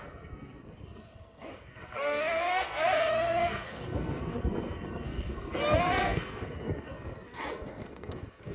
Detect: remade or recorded remade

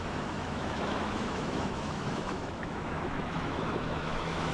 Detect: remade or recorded remade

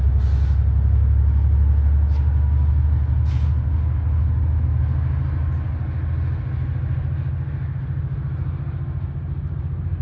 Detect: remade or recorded recorded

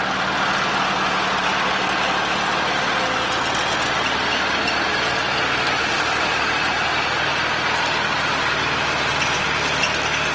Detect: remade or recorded recorded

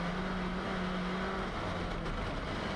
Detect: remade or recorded recorded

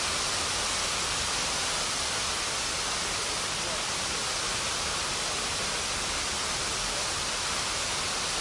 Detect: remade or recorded recorded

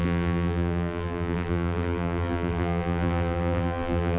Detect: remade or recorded remade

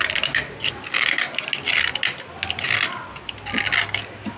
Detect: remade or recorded recorded